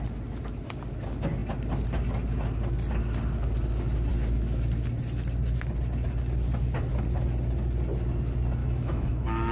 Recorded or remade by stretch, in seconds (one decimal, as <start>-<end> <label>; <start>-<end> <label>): 0.0-8.6 recorded; 8.6-9.5 remade